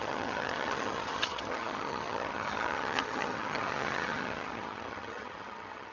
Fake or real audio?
fake